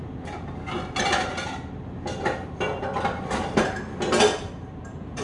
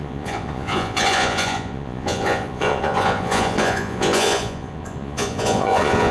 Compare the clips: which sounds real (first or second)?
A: first